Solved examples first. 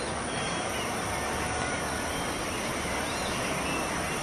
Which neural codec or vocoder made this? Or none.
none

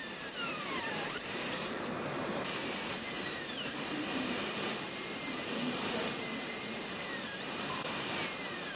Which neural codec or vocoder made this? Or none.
vocoder, BigVGAN v2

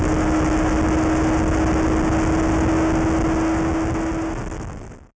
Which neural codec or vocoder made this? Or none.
none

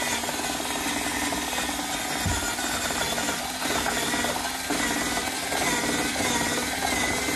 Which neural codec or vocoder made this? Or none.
none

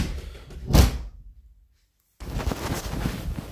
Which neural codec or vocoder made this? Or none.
none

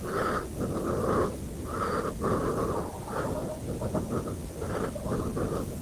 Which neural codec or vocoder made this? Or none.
none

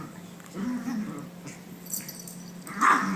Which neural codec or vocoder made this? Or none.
none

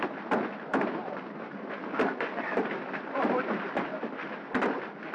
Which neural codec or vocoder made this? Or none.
vocoder, BigVGAN v2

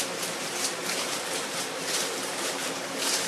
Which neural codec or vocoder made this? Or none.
vocoder, BigVGAN v2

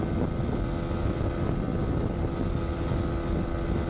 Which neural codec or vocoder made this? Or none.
none